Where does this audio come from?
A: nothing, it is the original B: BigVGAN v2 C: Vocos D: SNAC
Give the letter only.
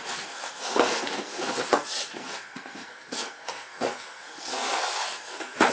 D